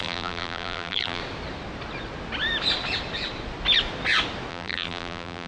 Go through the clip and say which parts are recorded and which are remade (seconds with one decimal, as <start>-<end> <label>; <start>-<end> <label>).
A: 0.0-1.2 remade; 1.2-4.5 recorded; 4.5-5.5 remade